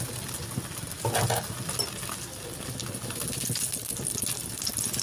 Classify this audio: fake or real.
real